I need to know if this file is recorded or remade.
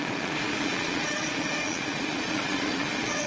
remade